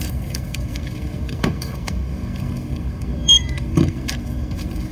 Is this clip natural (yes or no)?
no